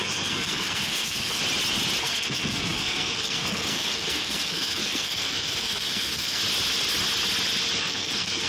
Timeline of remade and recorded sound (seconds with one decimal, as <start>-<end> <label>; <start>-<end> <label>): 0.0-1.4 remade; 1.4-2.0 recorded; 2.0-6.4 remade; 6.4-7.8 recorded; 7.8-8.5 remade